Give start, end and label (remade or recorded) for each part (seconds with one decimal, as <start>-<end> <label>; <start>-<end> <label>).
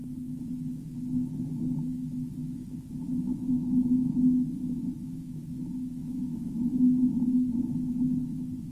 0.0-8.7 remade